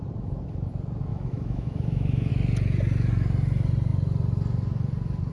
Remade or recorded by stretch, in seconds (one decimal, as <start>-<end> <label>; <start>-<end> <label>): 0.0-1.1 recorded; 1.1-2.3 remade; 2.3-5.3 recorded